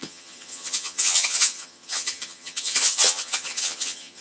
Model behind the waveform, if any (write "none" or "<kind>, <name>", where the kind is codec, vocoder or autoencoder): vocoder, HiFi-GAN